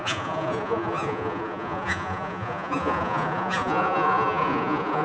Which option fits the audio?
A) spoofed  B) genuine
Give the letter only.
A